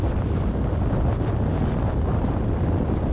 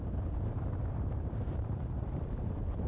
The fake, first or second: second